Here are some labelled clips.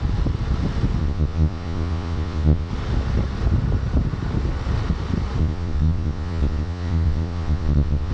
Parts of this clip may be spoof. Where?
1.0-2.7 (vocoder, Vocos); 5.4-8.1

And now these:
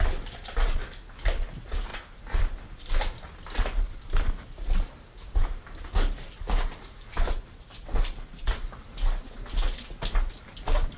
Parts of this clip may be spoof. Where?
none

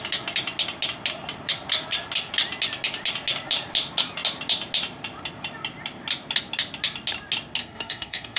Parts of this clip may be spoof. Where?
7.6-8.4 (codec, SNAC)

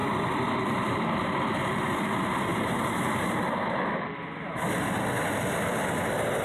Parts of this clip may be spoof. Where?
2.5-4.7 (vocoder, BigVGAN v2)

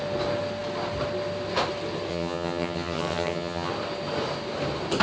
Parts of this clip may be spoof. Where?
2.1-3.7 (vocoder, HiFi-GAN)